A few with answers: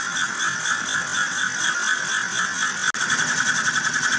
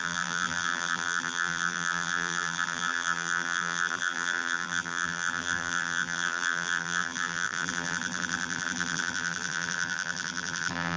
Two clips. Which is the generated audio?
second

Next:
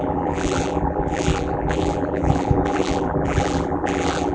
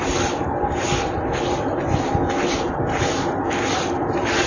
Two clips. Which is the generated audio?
first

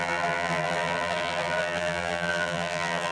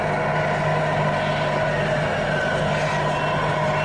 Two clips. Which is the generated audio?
first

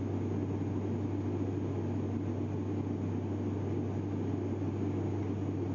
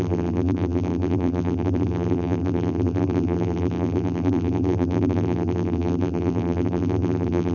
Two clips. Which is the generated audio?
second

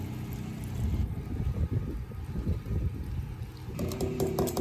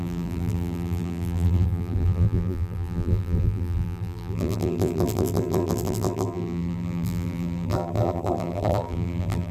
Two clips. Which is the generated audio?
second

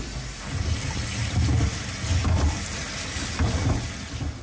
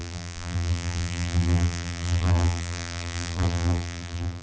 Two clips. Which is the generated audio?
second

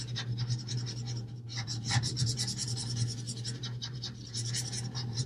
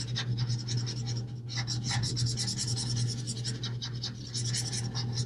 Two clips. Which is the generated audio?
first